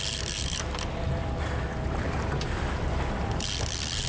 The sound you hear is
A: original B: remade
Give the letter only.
A